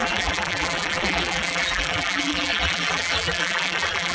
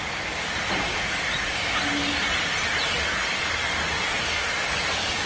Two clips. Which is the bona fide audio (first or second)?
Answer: second